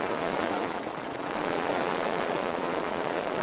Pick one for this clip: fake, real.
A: fake